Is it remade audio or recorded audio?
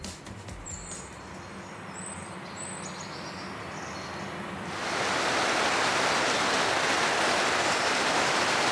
recorded